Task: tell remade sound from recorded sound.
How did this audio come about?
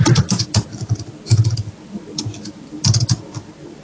recorded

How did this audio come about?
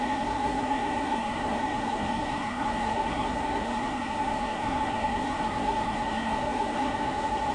remade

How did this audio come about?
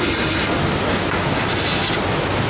recorded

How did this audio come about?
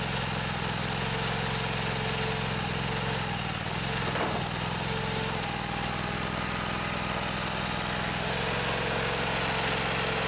recorded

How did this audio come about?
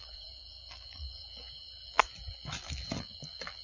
remade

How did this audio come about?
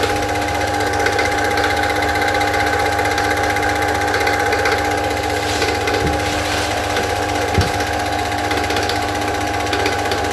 recorded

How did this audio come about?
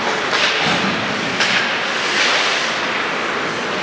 recorded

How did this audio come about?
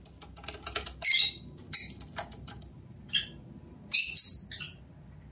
recorded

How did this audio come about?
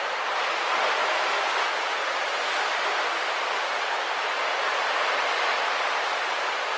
recorded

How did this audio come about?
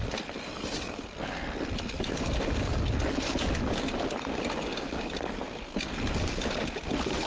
recorded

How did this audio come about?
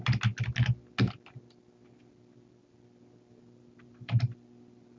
recorded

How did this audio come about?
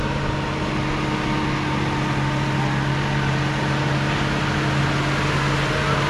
recorded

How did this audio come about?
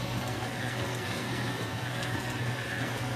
remade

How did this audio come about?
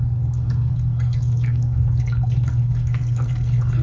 remade